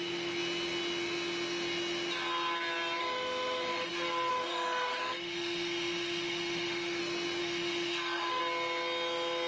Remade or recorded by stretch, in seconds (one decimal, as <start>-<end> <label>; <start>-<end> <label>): 0.0-3.0 recorded; 3.0-3.9 remade; 3.9-4.3 recorded; 4.3-7.0 remade; 7.0-7.4 recorded; 7.4-8.4 remade; 8.4-9.5 recorded